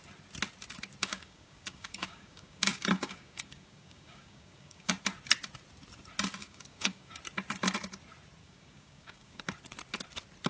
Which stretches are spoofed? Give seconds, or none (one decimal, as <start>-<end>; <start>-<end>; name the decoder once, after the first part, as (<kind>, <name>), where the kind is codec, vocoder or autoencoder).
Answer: 1.0-4.9 (codec, DAC); 6.4-7.2; 8.4-9.4